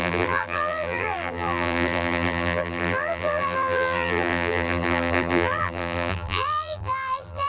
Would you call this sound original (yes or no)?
no